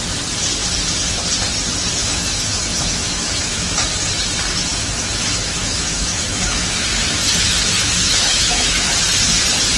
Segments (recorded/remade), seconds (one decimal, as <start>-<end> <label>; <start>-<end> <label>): 0.0-2.0 recorded; 2.0-3.7 remade; 3.7-4.7 recorded; 4.7-8.9 remade; 8.9-9.8 recorded